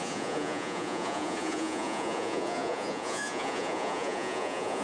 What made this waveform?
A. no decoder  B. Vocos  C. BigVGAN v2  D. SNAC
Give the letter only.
B